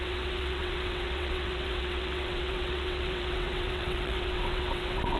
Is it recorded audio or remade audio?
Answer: remade